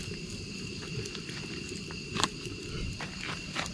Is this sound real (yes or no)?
yes